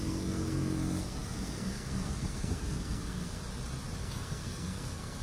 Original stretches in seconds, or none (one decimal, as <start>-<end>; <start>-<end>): 3.4-4.0